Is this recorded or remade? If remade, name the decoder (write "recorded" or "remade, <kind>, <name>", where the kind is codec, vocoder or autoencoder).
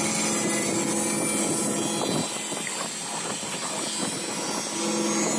recorded